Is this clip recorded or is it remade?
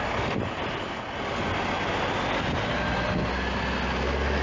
recorded